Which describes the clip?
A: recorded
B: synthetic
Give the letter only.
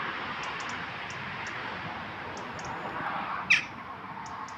A